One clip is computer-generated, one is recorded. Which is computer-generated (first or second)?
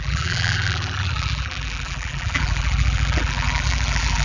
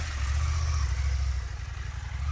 first